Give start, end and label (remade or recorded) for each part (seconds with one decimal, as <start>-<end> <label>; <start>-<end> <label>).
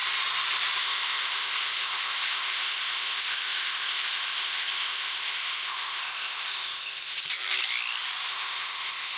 0.0-0.8 recorded; 0.8-7.2 remade; 7.2-8.3 recorded; 8.3-9.2 remade